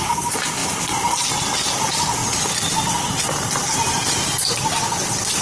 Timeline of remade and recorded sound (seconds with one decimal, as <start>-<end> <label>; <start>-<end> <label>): 0.0-5.4 recorded